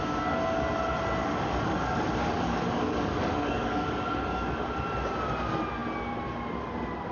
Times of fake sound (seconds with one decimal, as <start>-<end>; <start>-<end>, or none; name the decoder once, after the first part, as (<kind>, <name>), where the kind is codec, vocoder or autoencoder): 1.2-4.8 (codec, DAC)